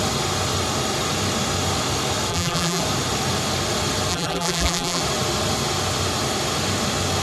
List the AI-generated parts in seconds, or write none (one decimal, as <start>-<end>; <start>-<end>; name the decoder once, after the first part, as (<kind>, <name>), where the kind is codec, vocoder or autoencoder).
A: 2.3-2.8 (vocoder, BigVGAN v2); 4.1-5.0